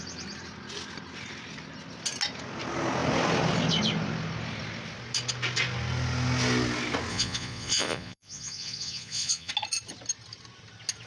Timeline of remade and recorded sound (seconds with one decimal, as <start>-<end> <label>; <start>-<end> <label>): 0.0-7.1 recorded; 7.1-9.5 remade; 9.5-11.1 recorded